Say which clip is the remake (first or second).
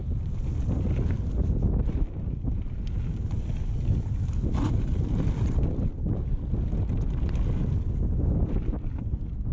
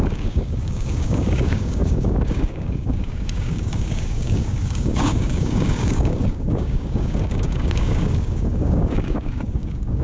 second